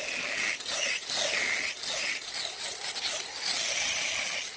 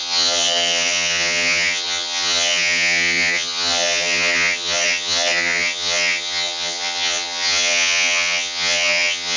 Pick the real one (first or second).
first